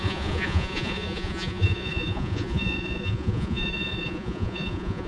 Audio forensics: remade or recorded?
remade